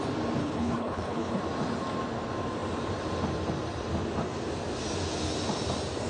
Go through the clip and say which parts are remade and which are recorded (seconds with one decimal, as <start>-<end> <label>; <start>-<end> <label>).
0.0-0.4 recorded; 0.4-1.4 remade; 1.4-6.1 recorded